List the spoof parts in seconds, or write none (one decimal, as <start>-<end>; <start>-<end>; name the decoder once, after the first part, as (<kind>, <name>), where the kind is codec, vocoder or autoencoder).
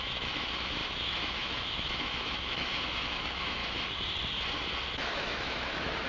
0.0-3.6 (autoencoder, DAC-VAE); 5.0-6.1